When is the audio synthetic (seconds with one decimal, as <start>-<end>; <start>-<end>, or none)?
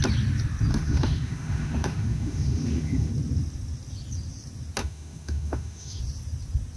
0.7-3.1; 4.8-6.0